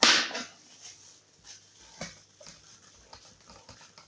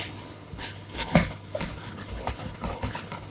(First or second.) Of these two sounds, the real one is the first